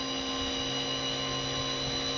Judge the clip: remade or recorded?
recorded